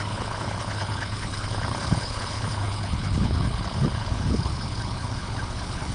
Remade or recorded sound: remade